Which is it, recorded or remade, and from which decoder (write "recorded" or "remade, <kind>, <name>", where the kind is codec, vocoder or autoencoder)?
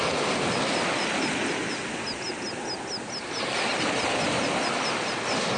recorded